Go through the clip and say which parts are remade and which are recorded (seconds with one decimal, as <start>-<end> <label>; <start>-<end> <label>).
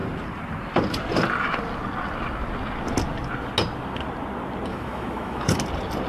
0.0-4.7 recorded; 4.7-5.6 remade; 5.6-6.1 recorded